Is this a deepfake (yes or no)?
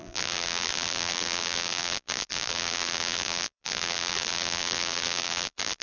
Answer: yes